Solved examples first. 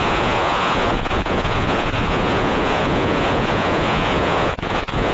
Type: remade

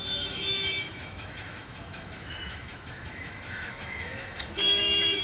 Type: remade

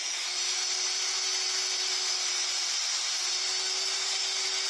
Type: recorded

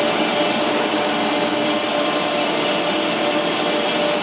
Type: recorded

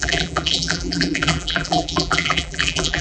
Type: remade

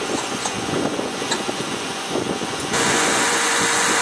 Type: remade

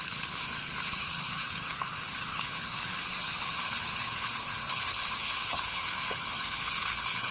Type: remade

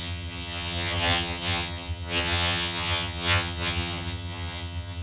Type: remade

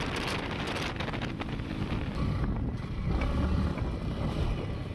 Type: recorded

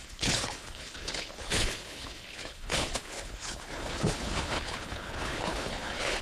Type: remade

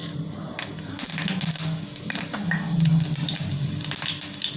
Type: recorded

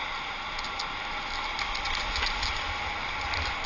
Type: recorded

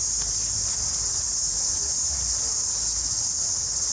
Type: recorded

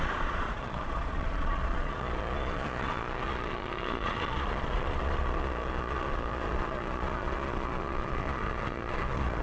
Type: remade